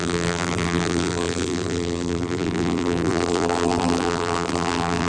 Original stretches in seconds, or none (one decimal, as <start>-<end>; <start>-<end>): none